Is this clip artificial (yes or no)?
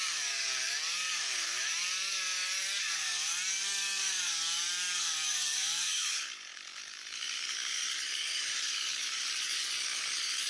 yes